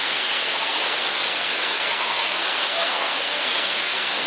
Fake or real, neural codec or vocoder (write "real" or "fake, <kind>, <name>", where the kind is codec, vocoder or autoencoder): fake, codec, SNAC